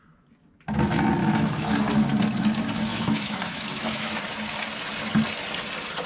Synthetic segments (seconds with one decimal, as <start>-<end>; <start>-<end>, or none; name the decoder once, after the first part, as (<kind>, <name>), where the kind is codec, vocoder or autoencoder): 1.2-1.8 (autoencoder, DAC-VAE); 2.9-4.2